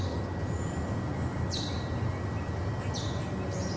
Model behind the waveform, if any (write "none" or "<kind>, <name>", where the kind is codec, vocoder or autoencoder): none